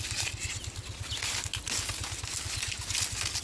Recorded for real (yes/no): yes